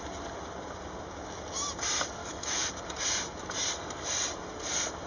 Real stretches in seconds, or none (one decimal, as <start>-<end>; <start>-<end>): 0.0-2.2; 2.7-5.1